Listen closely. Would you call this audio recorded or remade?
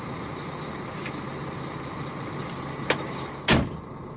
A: recorded